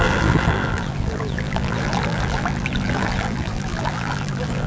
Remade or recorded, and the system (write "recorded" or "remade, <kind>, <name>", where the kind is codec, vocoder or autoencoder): remade, vocoder, BigVGAN v2